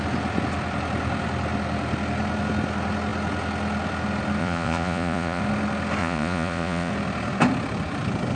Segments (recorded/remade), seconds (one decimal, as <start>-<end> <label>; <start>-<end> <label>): 0.0-4.4 recorded; 4.4-5.4 remade; 5.4-6.0 recorded; 6.0-6.9 remade; 6.9-8.4 recorded